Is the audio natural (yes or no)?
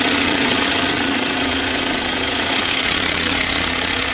no